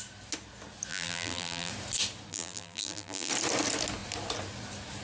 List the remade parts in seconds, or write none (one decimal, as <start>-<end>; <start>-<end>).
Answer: 0.9-1.7; 2.3-3.3